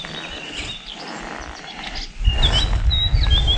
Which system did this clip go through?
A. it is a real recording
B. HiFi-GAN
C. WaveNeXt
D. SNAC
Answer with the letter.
A